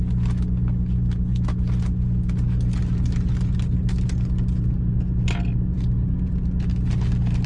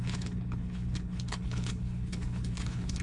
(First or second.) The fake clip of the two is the second